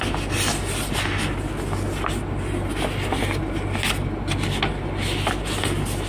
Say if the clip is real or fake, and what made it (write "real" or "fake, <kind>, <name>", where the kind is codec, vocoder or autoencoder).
real